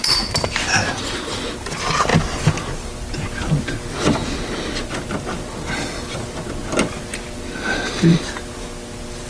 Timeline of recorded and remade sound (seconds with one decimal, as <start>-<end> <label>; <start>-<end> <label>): 0.0-9.3 recorded